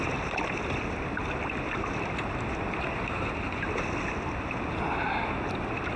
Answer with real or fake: real